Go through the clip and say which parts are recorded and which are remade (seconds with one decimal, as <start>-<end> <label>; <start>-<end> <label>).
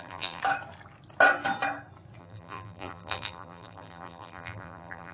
0.0-0.4 remade; 0.4-2.2 recorded; 2.2-5.1 remade